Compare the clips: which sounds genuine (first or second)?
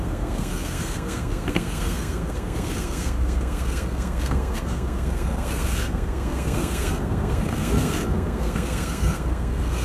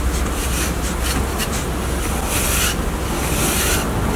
second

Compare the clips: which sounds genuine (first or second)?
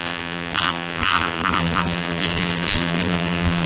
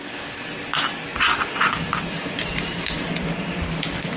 second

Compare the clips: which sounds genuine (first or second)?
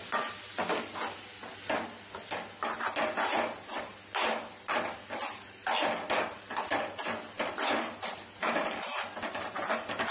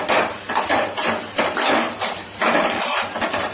first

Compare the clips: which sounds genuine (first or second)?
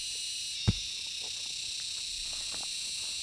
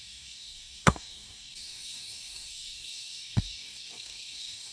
first